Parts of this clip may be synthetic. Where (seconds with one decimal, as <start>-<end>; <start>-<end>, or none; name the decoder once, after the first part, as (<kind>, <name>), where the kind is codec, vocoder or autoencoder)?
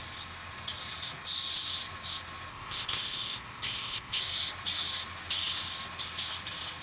2.5-4.2 (codec, ZipCodec)